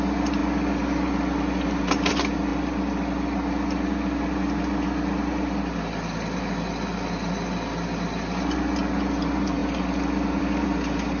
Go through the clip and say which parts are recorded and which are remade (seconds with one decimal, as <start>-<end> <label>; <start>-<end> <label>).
0.0-11.2 recorded